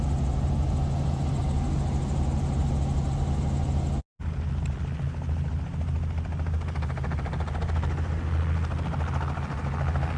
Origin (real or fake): real